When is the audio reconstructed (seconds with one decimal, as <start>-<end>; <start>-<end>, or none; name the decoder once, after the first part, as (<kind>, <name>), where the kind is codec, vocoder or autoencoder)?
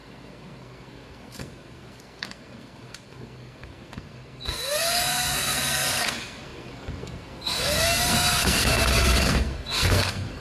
0.0-10.4 (codec, SNAC)